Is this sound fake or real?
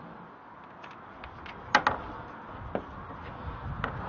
real